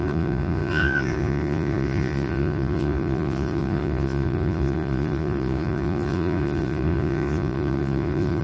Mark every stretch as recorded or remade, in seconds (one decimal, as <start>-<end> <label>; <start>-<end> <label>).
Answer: 0.0-8.4 remade